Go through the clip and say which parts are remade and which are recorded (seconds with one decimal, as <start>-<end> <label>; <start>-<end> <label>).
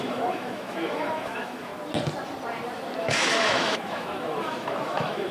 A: 0.0-1.7 remade; 1.7-3.0 recorded; 3.0-5.3 remade